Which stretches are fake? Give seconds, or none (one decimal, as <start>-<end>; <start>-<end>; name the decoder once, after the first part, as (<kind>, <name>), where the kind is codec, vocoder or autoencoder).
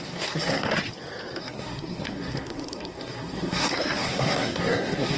0.0-0.7 (codec, SNAC); 1.4-5.2